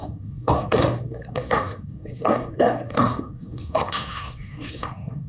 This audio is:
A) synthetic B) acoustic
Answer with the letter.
A